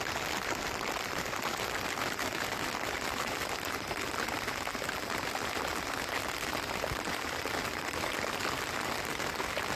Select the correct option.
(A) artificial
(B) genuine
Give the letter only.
B